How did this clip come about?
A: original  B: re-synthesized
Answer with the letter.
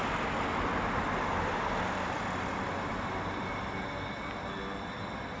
A